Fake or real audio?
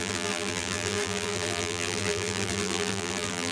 fake